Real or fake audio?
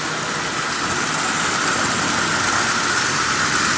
real